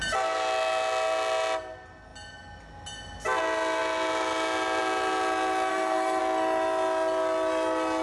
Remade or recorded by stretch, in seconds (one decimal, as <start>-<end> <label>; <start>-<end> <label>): 0.0-5.7 recorded; 5.7-6.2 remade; 6.2-8.0 recorded